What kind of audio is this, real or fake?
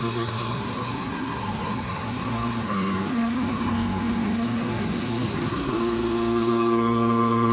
fake